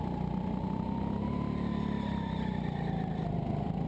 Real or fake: real